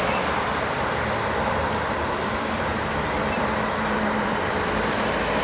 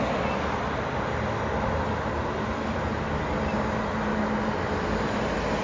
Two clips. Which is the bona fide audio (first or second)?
second